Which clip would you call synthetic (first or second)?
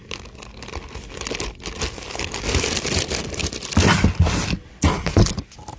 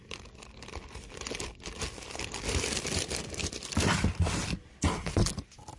second